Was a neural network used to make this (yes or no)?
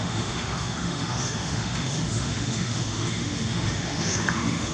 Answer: yes